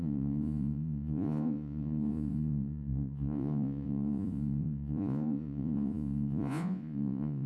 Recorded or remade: remade